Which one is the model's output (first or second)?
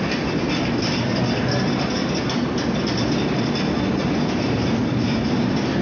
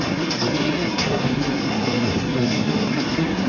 second